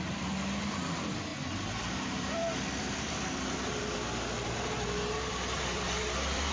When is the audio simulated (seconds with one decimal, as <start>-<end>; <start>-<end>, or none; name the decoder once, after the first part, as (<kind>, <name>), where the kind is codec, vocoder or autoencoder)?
0.0-1.3 (vocoder, BigVGAN v2); 1.8-6.5